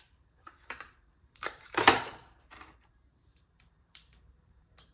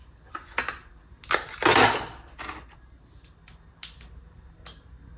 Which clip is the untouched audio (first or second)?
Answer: second